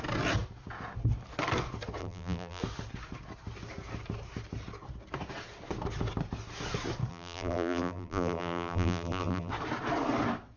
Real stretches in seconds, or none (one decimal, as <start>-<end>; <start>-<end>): 0.0-2.0; 2.6-7.1; 9.5-10.6